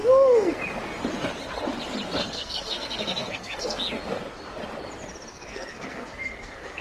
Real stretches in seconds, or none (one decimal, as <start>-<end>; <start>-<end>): 0.6-2.2; 3.8-5.3